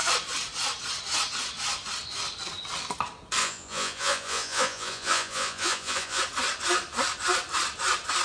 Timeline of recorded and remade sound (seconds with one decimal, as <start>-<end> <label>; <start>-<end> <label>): 0.0-3.4 recorded; 3.4-6.2 remade; 6.2-8.2 recorded